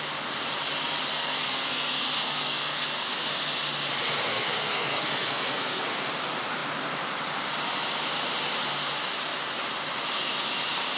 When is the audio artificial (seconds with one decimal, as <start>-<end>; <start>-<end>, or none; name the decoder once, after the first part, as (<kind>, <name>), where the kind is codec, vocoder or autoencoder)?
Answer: 1.1-3.3 (codec, SNAC); 4.3-6.1